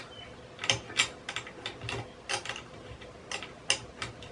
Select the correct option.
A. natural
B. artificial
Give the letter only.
A